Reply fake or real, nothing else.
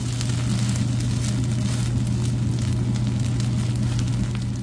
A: real